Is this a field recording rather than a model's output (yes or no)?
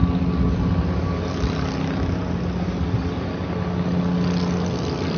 yes